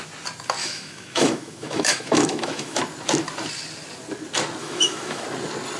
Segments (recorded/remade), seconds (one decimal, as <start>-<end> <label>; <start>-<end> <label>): 0.0-0.6 recorded; 0.6-2.8 remade; 2.8-4.6 recorded; 4.6-5.2 remade; 5.2-5.8 recorded